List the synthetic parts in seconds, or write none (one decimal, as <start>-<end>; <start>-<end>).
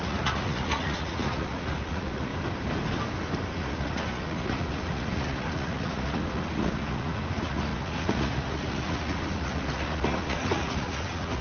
0.0-2.3; 3.5-11.4